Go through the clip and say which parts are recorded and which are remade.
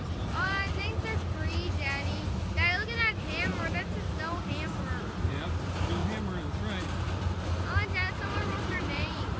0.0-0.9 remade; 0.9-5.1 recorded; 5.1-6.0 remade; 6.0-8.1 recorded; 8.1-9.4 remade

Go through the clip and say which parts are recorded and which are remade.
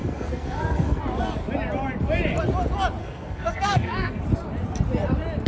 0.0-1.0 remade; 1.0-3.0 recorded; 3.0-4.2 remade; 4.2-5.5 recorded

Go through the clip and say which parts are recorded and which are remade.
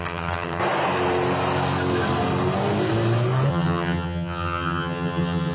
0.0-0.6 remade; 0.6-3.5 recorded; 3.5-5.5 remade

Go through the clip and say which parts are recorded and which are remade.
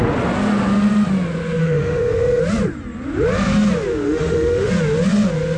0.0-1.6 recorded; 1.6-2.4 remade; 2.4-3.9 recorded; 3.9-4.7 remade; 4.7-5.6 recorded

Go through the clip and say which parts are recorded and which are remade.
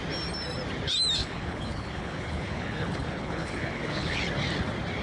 0.0-1.2 recorded; 1.2-4.2 remade; 4.2-5.0 recorded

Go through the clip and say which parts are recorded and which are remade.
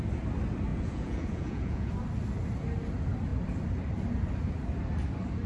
0.0-0.7 recorded; 0.7-1.9 remade; 1.9-5.5 recorded